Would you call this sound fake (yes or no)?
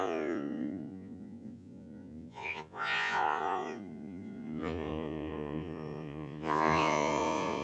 yes